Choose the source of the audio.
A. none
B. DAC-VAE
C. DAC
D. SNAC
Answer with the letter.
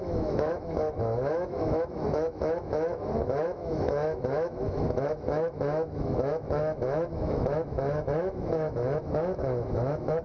B